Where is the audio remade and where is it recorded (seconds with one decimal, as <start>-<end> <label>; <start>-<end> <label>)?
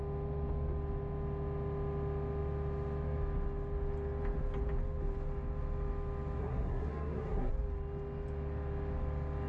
0.0-6.4 recorded; 6.4-7.5 remade; 7.5-9.5 recorded